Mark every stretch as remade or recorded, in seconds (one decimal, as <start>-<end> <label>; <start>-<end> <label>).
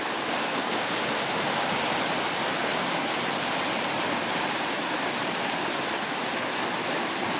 0.0-0.4 recorded; 0.4-0.9 remade; 0.9-7.4 recorded